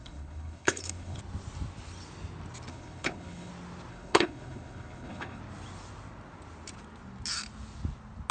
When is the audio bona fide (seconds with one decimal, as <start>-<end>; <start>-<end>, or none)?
1.2-2.7; 3.5-3.9; 5.4-8.3